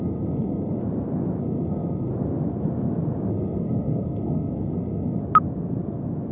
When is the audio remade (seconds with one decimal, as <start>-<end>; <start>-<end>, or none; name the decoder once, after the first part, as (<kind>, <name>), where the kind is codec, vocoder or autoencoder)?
0.0-0.8 (codec, SNAC); 1.4-2.1; 3.3-5.2